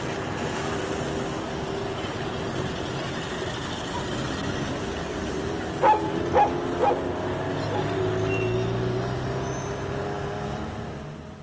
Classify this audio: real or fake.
real